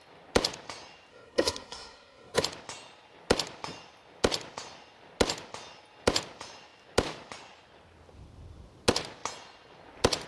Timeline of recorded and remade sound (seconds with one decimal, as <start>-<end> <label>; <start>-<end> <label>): 0.0-1.1 recorded; 1.1-2.4 remade; 2.4-10.3 recorded